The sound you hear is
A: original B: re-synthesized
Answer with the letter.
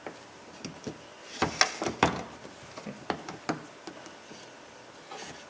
A